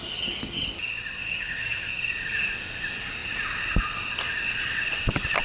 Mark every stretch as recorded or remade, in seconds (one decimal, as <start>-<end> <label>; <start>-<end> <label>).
0.0-1.2 recorded; 1.2-1.9 remade; 1.9-5.4 recorded